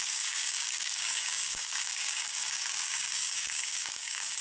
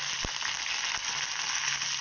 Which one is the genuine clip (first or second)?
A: second